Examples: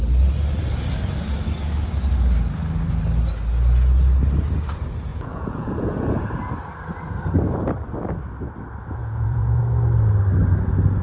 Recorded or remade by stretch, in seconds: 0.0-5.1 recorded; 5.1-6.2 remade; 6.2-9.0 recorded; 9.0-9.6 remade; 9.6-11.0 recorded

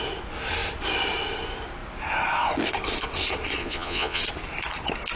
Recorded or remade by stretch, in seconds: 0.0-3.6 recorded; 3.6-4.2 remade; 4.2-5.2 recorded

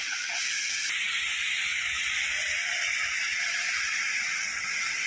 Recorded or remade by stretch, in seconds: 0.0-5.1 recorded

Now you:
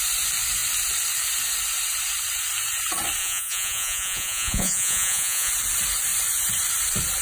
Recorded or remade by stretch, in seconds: 0.0-3.2 recorded; 3.2-5.5 remade; 5.5-7.2 recorded

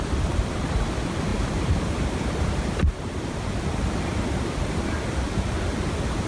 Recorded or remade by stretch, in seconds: 0.0-6.3 recorded

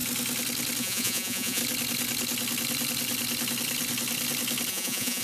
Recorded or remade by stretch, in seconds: 0.0-0.8 recorded; 0.8-1.6 remade; 1.6-4.7 recorded; 4.7-5.2 remade

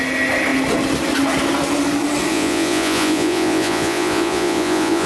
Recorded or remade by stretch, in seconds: 0.0-2.3 recorded; 2.3-5.1 remade

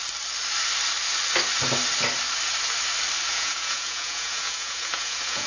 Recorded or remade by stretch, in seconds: 0.0-3.3 recorded; 3.3-5.5 remade